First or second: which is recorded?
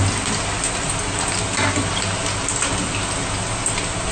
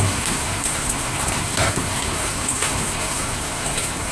first